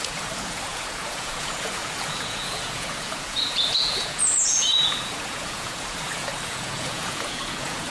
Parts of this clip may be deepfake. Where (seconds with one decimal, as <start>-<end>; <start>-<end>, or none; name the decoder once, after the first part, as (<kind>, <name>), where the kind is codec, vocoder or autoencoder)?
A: 0.0-7.9 (vocoder, Vocos)